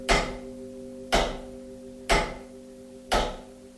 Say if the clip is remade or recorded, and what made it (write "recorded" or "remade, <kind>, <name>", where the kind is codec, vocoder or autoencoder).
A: recorded